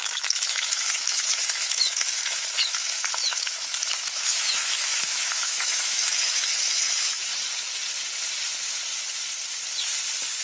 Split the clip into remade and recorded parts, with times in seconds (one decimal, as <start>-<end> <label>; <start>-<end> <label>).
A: 0.0-7.3 remade; 7.3-10.4 recorded